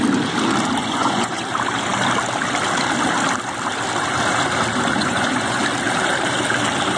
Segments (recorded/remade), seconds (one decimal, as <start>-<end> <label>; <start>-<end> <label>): 0.0-0.8 recorded; 0.8-1.4 remade; 1.4-5.0 recorded; 5.0-5.6 remade; 5.6-7.0 recorded